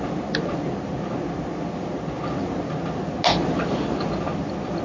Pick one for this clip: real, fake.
real